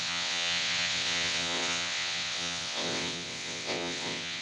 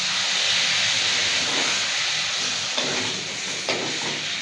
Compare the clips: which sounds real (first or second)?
second